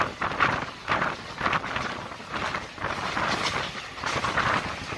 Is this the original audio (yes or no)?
yes